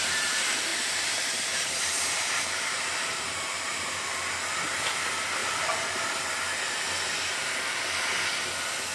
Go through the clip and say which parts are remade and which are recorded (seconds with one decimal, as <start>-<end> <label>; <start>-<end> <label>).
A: 0.0-0.7 recorded; 0.7-4.4 remade; 4.4-5.4 recorded; 5.4-6.1 remade; 6.1-8.9 recorded

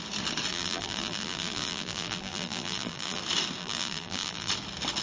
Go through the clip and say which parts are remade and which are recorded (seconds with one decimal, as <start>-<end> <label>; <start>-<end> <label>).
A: 0.0-0.5 recorded; 0.5-3.2 remade; 3.2-3.6 recorded; 3.6-4.5 remade; 4.5-5.0 recorded

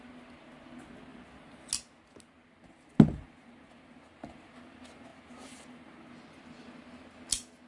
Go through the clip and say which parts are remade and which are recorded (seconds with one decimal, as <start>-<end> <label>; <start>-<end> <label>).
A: 0.0-7.7 recorded

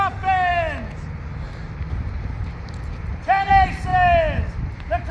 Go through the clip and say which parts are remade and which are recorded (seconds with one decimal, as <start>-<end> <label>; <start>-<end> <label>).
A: 0.0-5.1 recorded

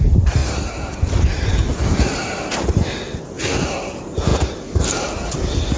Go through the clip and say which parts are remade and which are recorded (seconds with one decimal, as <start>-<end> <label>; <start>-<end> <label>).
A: 0.0-0.4 recorded; 0.4-3.2 remade; 3.2-4.3 recorded; 4.3-4.8 remade; 4.8-5.8 recorded

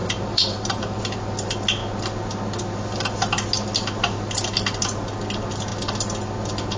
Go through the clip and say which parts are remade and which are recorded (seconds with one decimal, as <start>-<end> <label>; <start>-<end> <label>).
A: 0.0-1.0 remade; 1.0-6.8 recorded

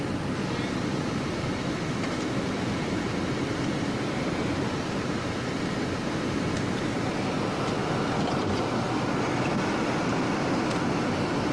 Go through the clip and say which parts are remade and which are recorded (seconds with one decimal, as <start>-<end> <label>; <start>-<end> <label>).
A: 0.0-7.8 recorded; 7.8-10.5 remade; 10.5-11.5 recorded